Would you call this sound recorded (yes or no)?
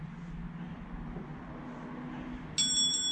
yes